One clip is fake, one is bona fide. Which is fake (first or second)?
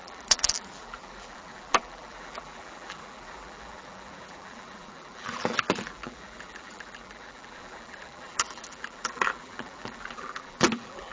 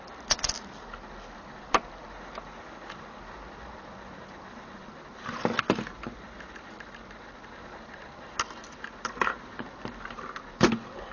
first